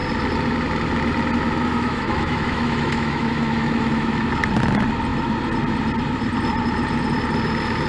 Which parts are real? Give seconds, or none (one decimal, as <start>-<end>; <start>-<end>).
0.0-1.7; 4.3-7.9